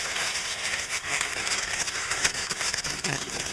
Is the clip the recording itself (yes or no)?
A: no